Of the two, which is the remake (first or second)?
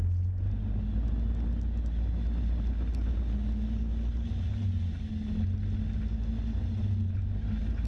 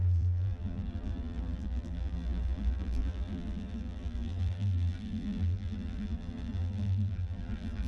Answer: second